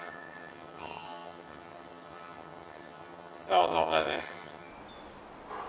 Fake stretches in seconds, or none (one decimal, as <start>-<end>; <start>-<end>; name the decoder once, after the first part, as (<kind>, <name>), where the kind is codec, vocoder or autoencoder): 0.0-4.7 (vocoder, HiFi-GAN)